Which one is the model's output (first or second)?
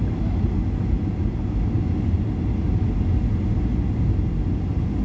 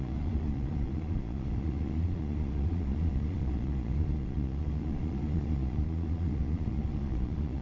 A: second